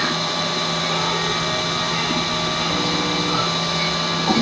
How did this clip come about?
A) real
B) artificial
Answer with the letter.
A